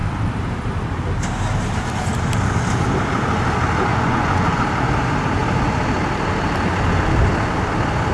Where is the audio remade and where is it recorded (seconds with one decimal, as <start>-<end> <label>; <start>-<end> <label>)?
0.0-3.9 recorded; 3.9-4.6 remade; 4.6-8.1 recorded